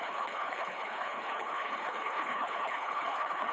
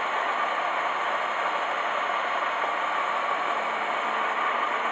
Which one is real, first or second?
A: second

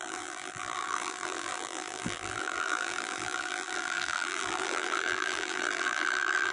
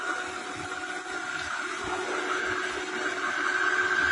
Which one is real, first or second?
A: second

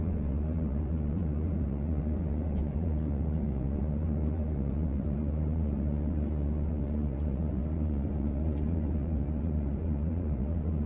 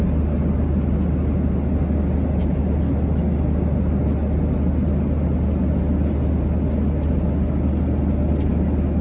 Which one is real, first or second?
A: second